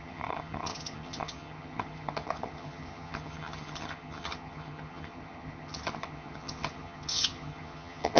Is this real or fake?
fake